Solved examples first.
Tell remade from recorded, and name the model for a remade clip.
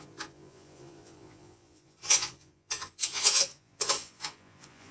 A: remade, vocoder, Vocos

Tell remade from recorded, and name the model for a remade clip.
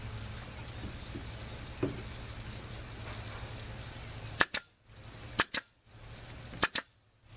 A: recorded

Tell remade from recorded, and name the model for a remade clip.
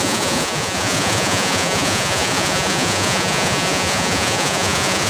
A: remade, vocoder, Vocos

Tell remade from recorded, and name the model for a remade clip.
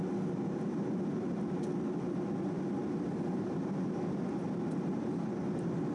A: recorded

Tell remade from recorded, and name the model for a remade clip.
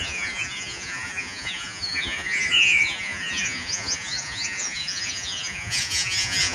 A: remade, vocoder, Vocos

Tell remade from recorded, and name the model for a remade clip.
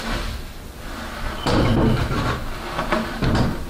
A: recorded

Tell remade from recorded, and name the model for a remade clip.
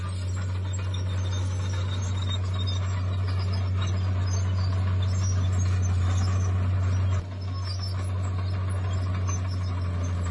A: recorded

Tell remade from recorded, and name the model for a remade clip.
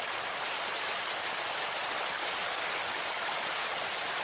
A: recorded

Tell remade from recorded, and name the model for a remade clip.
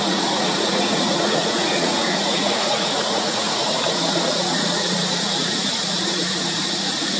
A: remade, vocoder, Vocos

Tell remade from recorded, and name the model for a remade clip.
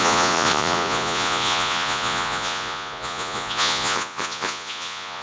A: remade, vocoder, Vocos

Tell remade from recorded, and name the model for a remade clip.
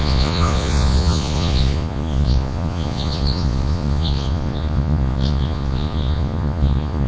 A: remade, vocoder, Vocos